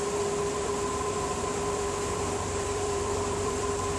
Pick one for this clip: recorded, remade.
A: remade